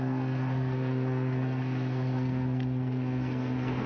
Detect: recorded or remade remade